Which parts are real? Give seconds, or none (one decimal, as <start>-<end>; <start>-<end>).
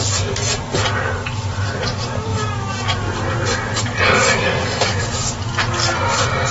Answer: 0.0-6.5